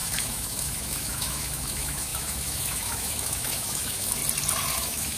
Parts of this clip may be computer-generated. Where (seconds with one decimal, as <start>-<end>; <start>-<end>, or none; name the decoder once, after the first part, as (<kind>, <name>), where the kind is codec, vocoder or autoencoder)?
0.0-4.2 (autoencoder, DAC-VAE); 4.7-5.2